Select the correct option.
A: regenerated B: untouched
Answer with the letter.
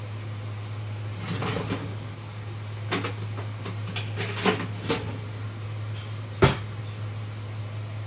B